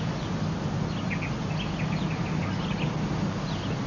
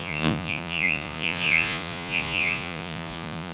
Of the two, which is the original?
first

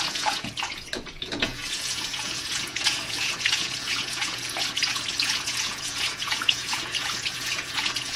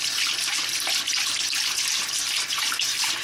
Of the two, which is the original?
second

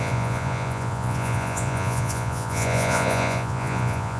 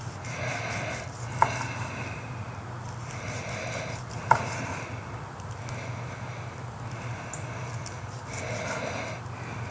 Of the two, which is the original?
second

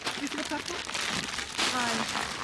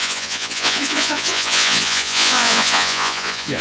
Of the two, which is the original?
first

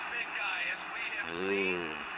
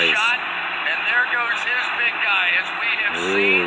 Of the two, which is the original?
second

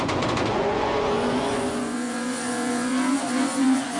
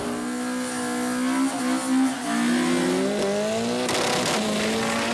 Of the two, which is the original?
second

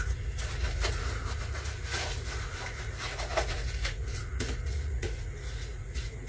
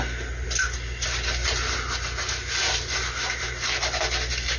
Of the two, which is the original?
second